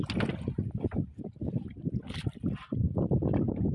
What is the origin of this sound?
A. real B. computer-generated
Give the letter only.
A